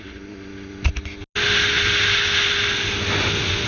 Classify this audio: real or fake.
real